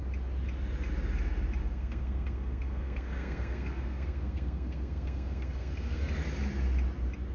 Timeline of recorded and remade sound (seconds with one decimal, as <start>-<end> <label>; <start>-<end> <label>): 0.0-1.6 recorded; 1.6-6.0 remade; 6.0-7.3 recorded